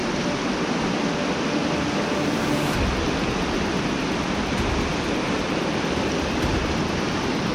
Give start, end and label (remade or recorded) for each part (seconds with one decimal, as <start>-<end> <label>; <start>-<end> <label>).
0.0-7.5 recorded